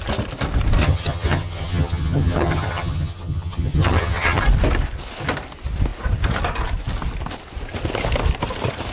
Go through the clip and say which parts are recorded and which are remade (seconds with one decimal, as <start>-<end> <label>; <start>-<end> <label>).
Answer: 0.0-0.8 recorded; 0.8-4.4 remade; 4.4-8.9 recorded